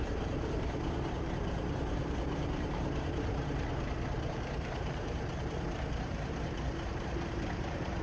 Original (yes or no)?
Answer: no